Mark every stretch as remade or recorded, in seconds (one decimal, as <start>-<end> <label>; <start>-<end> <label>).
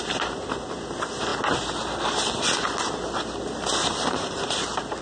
0.0-5.0 recorded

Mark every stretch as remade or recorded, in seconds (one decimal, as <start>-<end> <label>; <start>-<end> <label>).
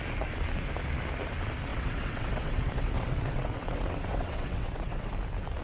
0.0-1.7 recorded; 1.7-5.1 remade; 5.1-5.6 recorded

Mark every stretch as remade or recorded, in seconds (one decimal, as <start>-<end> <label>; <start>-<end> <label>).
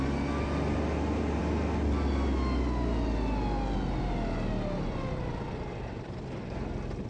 0.0-7.1 recorded